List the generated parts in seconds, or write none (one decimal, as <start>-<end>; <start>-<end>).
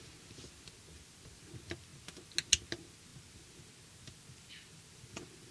none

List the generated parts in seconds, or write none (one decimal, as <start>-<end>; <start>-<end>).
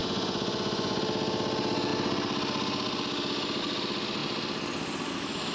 0.0-1.0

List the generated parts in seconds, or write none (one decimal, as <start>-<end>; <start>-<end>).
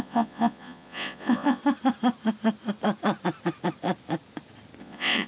0.0-1.6; 4.8-5.3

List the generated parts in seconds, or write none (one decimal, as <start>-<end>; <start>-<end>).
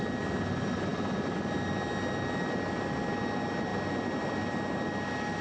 none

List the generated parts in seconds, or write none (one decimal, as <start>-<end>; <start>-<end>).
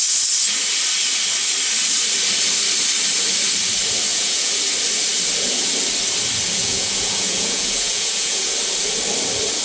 4.1-4.6; 6.6-8.5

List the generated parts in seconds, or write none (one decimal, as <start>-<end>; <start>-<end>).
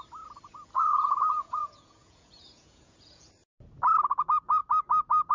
0.5-3.3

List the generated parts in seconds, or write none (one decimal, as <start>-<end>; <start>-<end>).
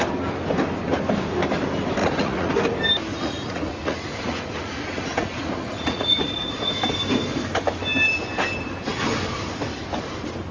2.0-2.5; 3.1-6.7